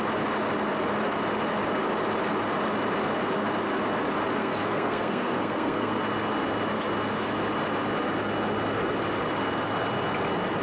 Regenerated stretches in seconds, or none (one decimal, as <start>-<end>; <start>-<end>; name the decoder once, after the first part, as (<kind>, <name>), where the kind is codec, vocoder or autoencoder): 4.4-6.0 (codec, SNAC)